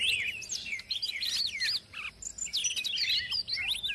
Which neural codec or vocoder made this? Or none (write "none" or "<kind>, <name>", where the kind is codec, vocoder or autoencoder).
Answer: none